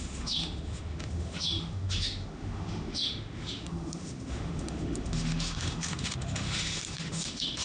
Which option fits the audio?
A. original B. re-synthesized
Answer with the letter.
B